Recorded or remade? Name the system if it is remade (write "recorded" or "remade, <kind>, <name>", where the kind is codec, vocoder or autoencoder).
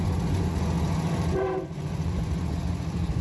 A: remade, vocoder, Vocos